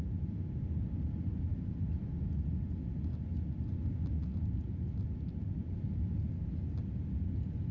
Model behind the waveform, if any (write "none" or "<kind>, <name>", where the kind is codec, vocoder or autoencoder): none